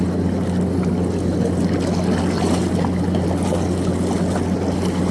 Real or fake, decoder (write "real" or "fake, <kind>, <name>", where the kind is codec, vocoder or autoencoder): real